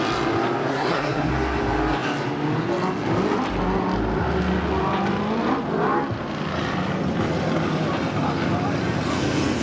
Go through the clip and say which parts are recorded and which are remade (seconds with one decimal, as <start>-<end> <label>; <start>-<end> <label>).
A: 0.0-0.7 recorded; 0.7-1.3 remade; 1.3-9.6 recorded